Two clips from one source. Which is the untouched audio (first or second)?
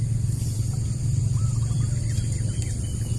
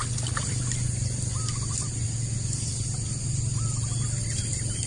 second